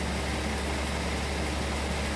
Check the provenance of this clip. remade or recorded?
recorded